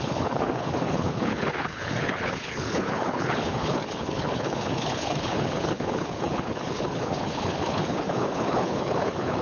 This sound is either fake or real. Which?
fake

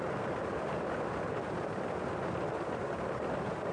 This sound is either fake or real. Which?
real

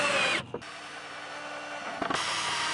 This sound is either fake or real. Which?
real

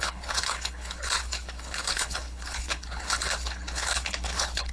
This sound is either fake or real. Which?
fake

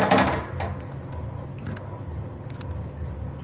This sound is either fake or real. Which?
real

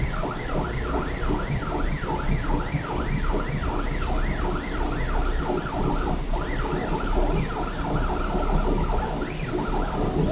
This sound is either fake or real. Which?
real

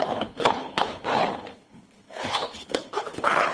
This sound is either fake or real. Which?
fake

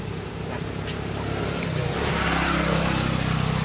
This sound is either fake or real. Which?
real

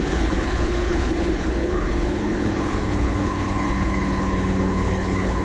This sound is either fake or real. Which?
fake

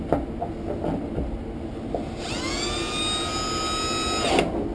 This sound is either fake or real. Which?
real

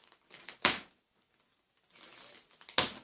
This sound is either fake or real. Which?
real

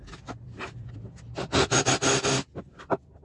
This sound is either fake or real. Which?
real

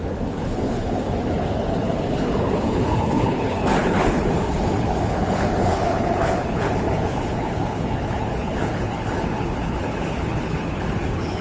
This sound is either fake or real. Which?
fake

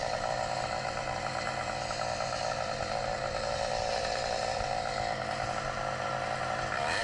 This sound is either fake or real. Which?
real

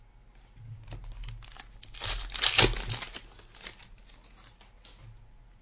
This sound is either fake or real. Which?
real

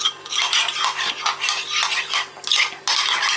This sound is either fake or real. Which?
real